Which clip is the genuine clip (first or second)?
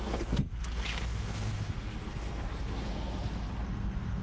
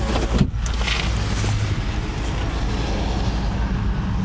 second